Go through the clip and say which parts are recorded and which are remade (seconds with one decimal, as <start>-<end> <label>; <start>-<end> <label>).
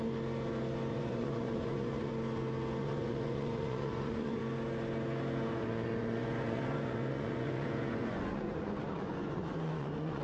0.0-0.9 recorded; 0.9-2.1 remade; 2.1-2.8 recorded; 2.8-4.4 remade; 4.4-5.6 recorded; 5.6-10.2 remade